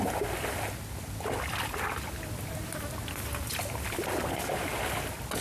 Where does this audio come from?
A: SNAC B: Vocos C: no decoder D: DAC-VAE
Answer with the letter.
C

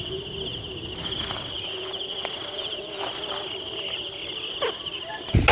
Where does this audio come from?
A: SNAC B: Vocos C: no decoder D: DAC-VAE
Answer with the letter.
C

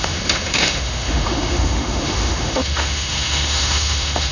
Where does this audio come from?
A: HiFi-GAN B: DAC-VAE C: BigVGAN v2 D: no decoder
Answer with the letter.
B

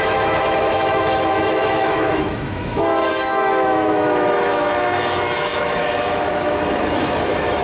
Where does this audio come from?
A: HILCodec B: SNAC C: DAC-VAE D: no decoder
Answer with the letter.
C